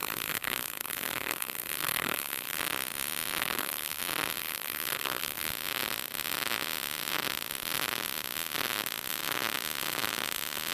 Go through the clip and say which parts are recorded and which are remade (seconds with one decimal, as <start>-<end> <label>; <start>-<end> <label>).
0.0-2.6 remade; 2.6-3.4 recorded; 3.4-4.0 remade; 4.0-4.4 recorded; 4.4-5.5 remade; 5.5-10.7 recorded